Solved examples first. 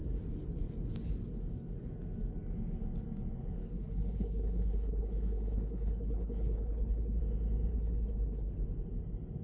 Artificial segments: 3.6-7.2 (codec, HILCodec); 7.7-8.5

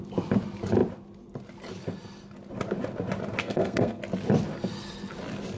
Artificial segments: 3.4-4.0 (codec, SNAC)

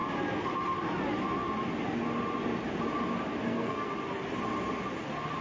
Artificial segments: 3.4-3.9 (codec, SNAC)

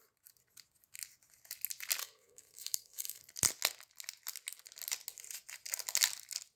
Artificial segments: 2.0-3.2 (codec, SNAC)

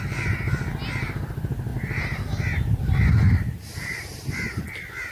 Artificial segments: none

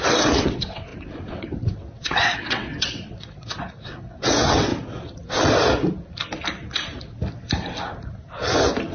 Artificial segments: 0.0-4.7 (vocoder, WaveNeXt)